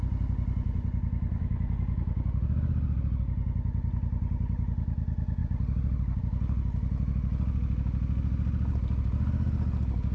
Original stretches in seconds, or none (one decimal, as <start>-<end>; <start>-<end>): 0.0-10.1